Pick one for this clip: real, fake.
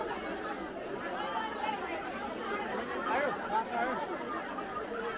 real